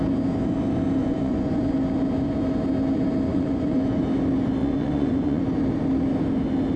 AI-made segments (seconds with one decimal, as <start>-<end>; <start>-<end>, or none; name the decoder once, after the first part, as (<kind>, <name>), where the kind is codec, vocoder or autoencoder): 1.0-1.6 (vocoder, Vocos); 3.3-4.0; 4.6-5.4

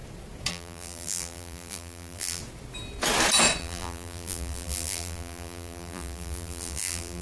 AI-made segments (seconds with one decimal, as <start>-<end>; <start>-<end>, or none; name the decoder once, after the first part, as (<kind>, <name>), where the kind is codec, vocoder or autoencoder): 0.5-2.4 (vocoder, BigVGAN v2); 3.6-7.2

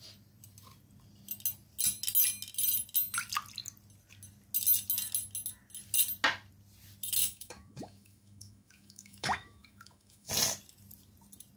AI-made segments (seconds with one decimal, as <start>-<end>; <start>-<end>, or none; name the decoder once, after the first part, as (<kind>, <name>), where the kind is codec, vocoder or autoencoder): 7.2-10.3 (autoencoder, DAC-VAE)

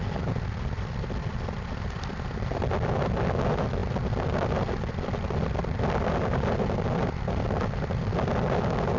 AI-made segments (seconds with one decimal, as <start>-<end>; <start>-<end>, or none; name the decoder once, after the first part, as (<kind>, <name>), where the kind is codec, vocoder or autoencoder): none

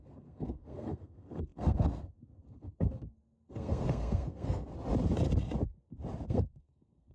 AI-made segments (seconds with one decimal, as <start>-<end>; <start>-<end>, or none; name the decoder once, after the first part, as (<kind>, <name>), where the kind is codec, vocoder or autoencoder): 0.0-4.7 (codec, SNAC); 6.3-7.1

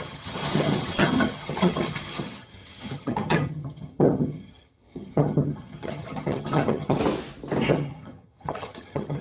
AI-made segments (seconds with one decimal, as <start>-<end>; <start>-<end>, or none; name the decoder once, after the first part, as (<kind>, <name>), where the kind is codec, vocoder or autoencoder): 0.0-7.0 (vocoder, HiFi-GAN); 7.7-9.2